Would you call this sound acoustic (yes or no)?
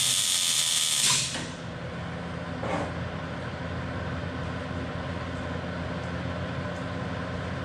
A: yes